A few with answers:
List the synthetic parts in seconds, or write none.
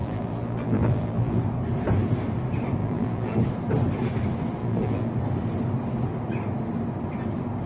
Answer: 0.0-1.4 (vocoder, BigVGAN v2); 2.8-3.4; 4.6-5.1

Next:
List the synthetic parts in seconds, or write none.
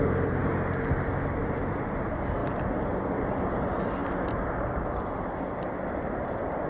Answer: none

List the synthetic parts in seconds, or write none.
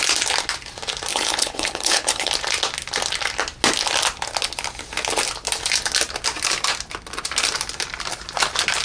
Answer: 1.1-2.3 (codec, HILCodec)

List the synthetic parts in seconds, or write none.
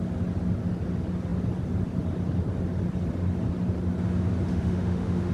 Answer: 4.5-5.3 (autoencoder, DAC-VAE)